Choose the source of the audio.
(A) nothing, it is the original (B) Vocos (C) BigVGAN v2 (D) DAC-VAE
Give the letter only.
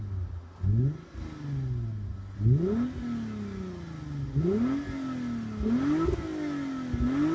A